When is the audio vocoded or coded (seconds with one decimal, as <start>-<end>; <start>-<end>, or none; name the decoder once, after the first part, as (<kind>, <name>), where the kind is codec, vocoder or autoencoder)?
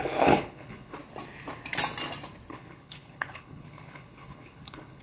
0.0-1.0 (codec, HILCodec); 2.5-5.0